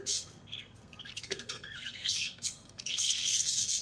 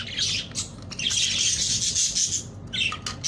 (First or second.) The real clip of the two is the second